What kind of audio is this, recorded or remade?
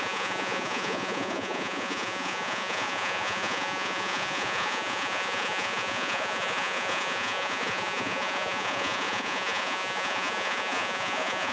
remade